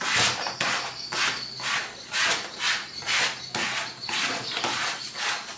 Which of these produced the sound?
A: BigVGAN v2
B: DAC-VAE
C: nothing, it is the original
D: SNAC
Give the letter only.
A